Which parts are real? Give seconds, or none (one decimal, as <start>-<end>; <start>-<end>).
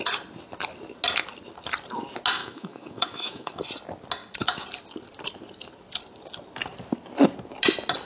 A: 0.0-2.4; 3.6-8.1